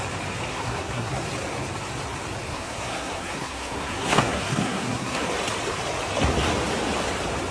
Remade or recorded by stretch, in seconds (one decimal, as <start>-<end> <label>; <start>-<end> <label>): 0.0-0.5 recorded; 0.5-1.1 remade; 1.1-2.5 recorded; 2.5-5.3 remade; 5.3-7.5 recorded